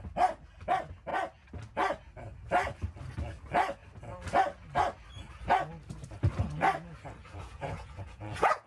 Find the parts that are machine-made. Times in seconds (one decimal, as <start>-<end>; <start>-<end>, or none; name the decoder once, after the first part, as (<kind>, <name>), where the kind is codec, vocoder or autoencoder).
7.2-8.7 (vocoder, Vocos)